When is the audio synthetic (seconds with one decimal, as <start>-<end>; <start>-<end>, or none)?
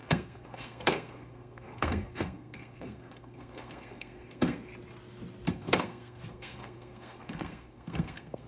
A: 0.0-4.7; 5.5-8.5